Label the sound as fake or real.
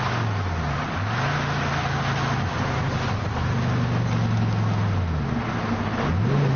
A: real